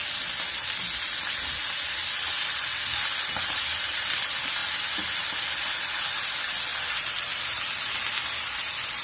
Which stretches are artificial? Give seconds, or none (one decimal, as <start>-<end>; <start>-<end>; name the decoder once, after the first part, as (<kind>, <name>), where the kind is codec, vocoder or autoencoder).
none